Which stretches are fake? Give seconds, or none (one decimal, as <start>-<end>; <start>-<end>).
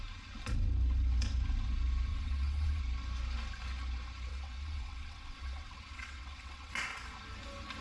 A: 2.1-2.8; 4.3-6.7